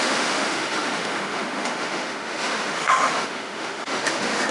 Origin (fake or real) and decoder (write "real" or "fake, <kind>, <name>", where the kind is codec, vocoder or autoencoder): fake, autoencoder, DAC-VAE